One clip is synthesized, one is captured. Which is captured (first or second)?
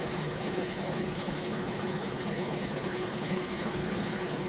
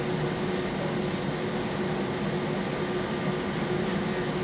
second